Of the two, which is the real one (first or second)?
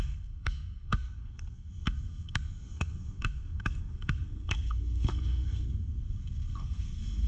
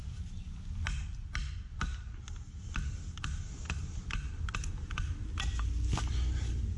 second